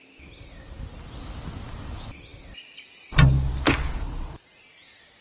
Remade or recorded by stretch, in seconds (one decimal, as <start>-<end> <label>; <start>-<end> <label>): 0.0-5.2 recorded